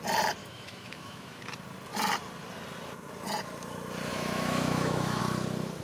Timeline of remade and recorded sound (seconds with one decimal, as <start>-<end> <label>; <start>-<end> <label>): 0.0-0.4 recorded; 0.4-1.4 remade; 1.4-4.1 recorded; 4.1-5.2 remade; 5.2-5.8 recorded